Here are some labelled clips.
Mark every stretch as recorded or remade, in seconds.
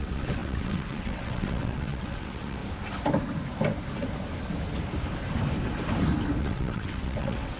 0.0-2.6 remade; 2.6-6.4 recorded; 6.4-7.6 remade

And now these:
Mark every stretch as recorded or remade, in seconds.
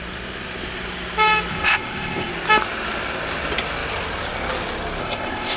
0.0-1.5 recorded; 1.5-2.3 remade; 2.3-5.0 recorded; 5.0-5.6 remade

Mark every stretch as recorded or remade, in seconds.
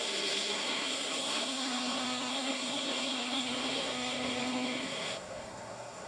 0.0-6.1 remade